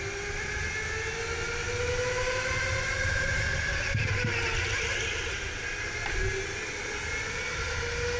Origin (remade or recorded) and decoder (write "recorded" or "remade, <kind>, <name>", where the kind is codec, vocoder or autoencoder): recorded